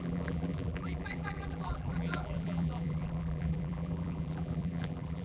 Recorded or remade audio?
remade